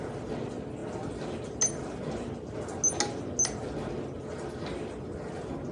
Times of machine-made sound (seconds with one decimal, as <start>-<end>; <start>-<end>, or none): none

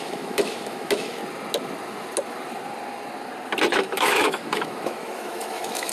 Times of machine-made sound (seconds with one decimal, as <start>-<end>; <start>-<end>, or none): 0.0-1.2; 3.7-5.9

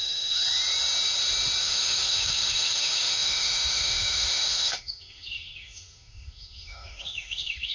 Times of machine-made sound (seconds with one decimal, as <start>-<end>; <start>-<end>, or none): 0.0-0.4; 1.6-7.7

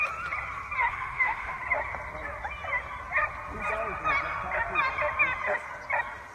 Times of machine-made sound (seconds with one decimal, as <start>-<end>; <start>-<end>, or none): 0.9-1.6